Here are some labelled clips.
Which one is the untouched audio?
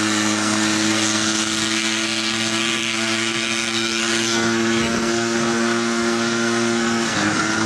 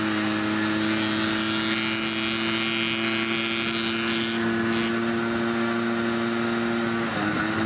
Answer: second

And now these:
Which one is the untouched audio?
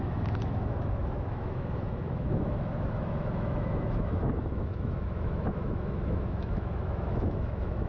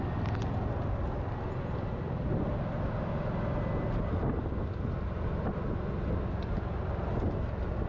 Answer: second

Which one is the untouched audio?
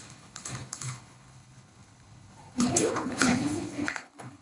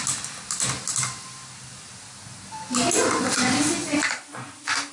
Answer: second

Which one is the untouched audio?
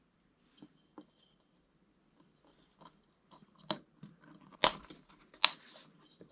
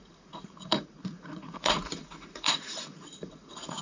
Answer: first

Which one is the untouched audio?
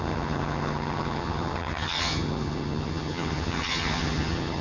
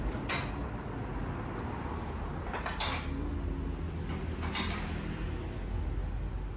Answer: second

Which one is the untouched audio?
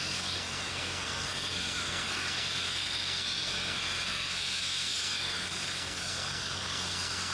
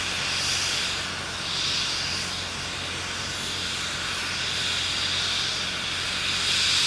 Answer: second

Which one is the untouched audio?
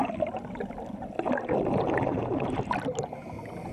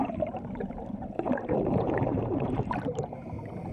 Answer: first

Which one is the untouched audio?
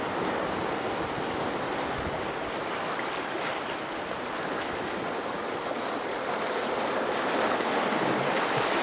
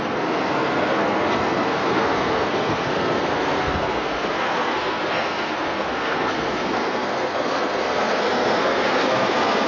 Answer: first